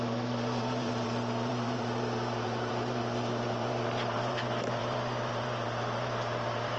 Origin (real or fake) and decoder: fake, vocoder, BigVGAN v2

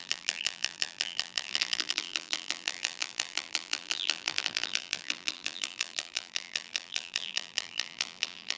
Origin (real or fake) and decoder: fake, vocoder, BigVGAN v2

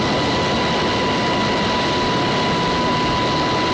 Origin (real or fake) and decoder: real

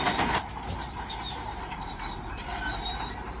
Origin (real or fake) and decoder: fake, vocoder, BigVGAN v2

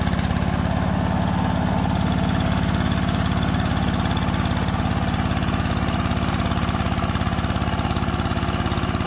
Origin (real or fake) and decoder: real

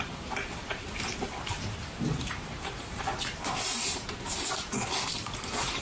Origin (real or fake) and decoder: fake, vocoder, BigVGAN v2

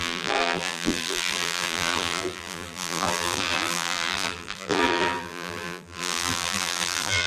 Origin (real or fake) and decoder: fake, vocoder, BigVGAN v2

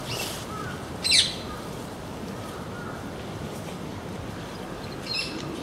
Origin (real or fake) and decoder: fake, vocoder, BigVGAN v2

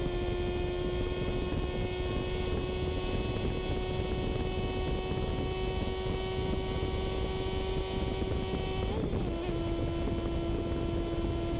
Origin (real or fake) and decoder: real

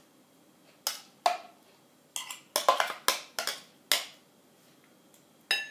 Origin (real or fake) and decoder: real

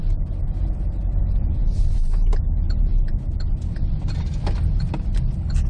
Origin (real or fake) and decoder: real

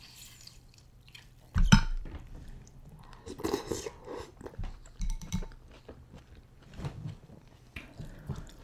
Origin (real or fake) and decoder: fake, vocoder, BigVGAN v2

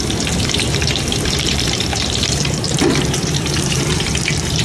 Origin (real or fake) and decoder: fake, vocoder, BigVGAN v2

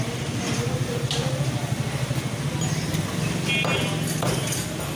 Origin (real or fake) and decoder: real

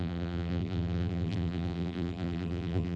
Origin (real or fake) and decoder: fake, vocoder, BigVGAN v2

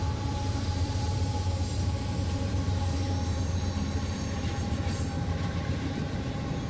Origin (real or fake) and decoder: fake, vocoder, BigVGAN v2